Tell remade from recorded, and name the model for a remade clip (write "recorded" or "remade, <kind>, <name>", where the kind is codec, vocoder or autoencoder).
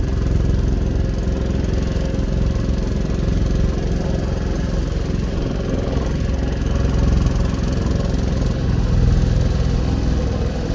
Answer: recorded